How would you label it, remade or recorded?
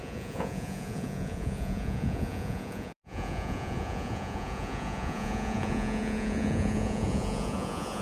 remade